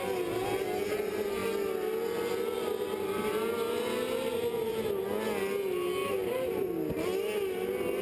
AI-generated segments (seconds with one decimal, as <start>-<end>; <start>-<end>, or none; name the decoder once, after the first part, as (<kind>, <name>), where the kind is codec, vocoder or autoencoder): 6.0-6.7 (vocoder, BigVGAN v2)